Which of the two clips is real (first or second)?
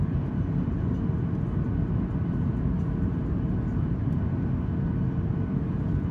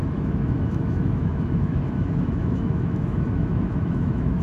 first